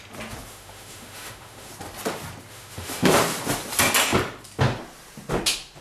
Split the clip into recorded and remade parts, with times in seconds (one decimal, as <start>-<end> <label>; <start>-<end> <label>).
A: 0.0-0.5 recorded; 0.5-1.7 remade; 1.7-2.5 recorded; 2.5-3.1 remade; 3.1-5.8 recorded